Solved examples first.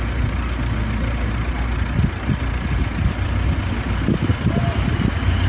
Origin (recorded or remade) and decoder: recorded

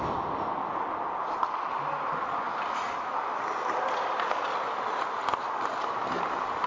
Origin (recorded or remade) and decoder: recorded